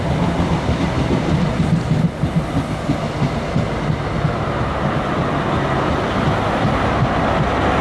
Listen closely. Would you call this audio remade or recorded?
recorded